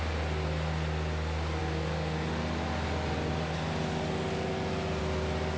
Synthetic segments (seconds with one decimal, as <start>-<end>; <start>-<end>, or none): none